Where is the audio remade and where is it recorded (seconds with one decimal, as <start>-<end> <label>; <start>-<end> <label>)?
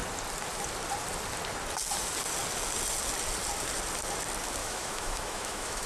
0.0-4.6 recorded; 4.6-5.9 remade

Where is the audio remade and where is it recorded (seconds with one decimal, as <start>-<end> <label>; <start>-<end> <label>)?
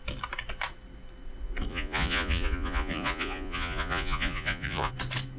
0.0-1.7 recorded; 1.7-4.9 remade; 4.9-5.4 recorded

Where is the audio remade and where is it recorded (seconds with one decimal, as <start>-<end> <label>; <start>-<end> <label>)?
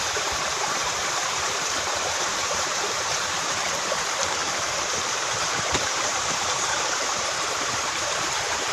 0.0-8.7 remade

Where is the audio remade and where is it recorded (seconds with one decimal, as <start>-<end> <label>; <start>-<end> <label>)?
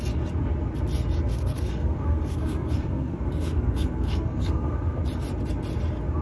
0.0-1.3 recorded; 1.3-5.0 remade; 5.0-6.2 recorded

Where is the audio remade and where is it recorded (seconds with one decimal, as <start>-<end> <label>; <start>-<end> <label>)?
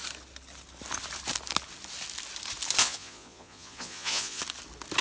0.0-2.8 recorded; 2.8-4.4 remade; 4.4-5.0 recorded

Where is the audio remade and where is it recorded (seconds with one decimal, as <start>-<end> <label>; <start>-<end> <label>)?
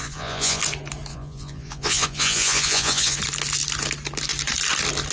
0.0-0.6 remade; 0.6-1.1 recorded; 1.1-3.2 remade; 3.2-5.1 recorded